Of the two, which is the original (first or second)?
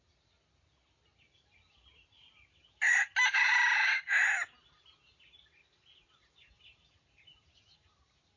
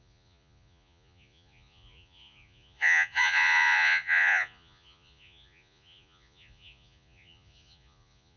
first